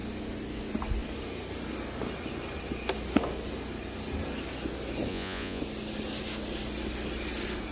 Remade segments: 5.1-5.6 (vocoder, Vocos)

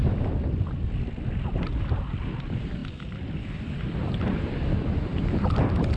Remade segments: 0.8-6.0 (vocoder, BigVGAN v2)

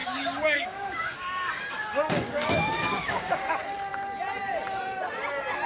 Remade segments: 0.0-3.4 (codec, DAC)

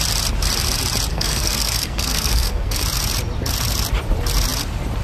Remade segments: 1.1-2.8 (codec, SNAC)

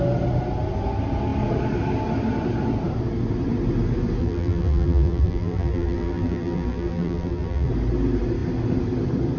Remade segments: 4.2-7.7 (vocoder, BigVGAN v2)

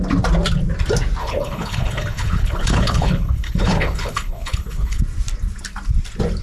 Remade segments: 1.2-5.0 (codec, HILCodec)

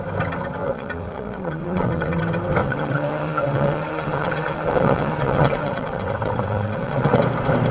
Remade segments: 0.6-2.2 (vocoder, WaveNeXt); 2.6-7.2

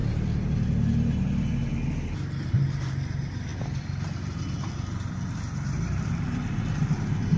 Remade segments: none